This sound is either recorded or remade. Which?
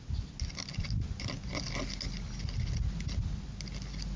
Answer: recorded